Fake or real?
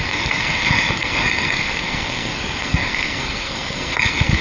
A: fake